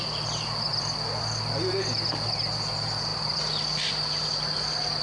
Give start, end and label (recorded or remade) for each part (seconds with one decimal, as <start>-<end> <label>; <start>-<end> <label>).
0.0-5.0 recorded